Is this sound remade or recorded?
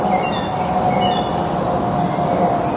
recorded